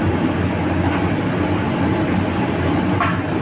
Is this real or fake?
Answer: real